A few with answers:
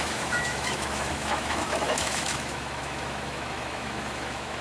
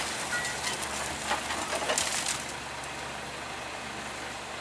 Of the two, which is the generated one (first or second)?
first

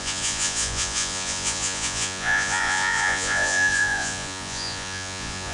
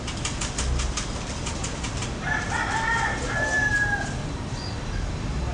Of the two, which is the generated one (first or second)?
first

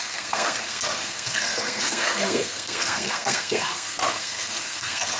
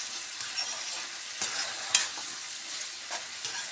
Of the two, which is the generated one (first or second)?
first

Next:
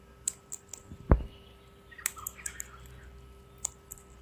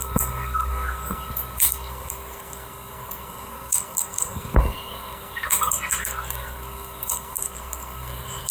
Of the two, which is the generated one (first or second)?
second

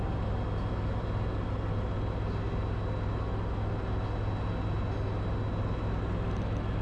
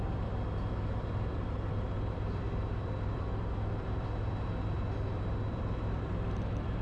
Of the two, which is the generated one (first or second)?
second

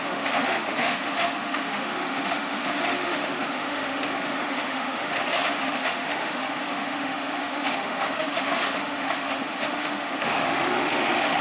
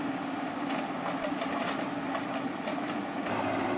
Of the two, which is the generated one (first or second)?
first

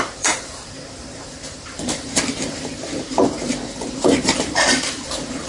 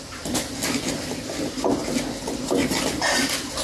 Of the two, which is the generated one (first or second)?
first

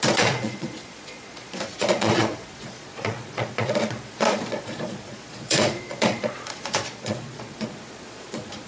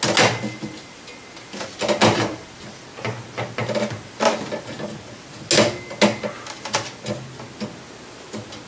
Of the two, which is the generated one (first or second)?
first